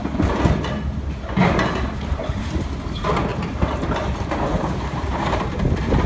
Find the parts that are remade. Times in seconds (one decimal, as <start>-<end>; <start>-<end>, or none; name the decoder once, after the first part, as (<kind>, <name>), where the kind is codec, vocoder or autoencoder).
3.3-5.6 (vocoder, BigVGAN v2)